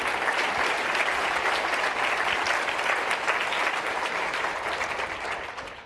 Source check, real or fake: real